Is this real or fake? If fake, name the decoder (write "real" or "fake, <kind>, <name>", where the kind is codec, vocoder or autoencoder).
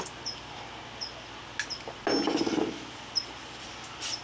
real